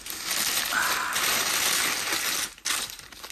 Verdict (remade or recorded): recorded